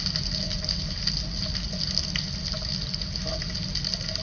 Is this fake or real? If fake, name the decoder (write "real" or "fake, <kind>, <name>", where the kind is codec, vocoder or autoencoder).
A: real